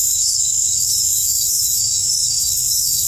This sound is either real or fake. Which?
fake